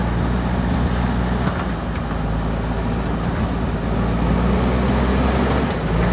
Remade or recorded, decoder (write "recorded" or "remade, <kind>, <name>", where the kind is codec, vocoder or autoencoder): recorded